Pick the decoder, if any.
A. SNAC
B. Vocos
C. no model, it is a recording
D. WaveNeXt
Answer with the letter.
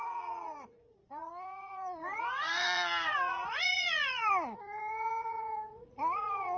B